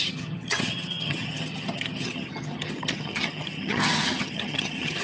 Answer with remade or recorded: remade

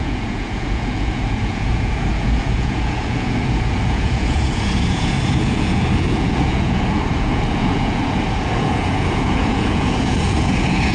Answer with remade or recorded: remade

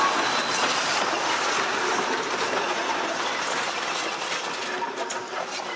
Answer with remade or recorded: recorded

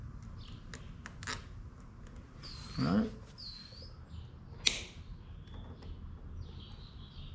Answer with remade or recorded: recorded